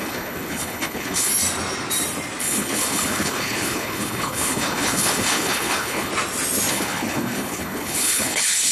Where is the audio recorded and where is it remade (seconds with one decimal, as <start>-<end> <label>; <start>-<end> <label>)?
0.0-1.3 remade; 1.3-2.4 recorded; 2.4-6.1 remade; 6.1-6.7 recorded; 6.7-8.7 remade